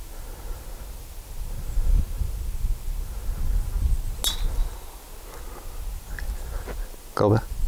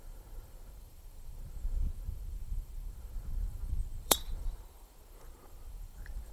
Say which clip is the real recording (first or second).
first